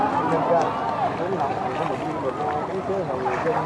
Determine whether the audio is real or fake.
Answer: real